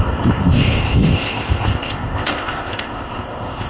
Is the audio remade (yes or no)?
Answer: yes